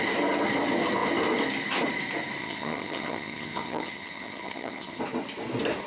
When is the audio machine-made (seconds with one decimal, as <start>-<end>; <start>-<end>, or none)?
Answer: 2.4-5.0